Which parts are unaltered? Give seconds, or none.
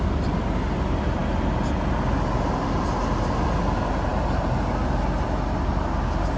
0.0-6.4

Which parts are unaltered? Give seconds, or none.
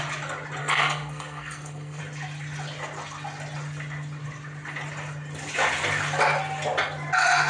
0.0-0.6; 2.0-7.5